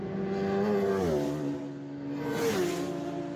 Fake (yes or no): no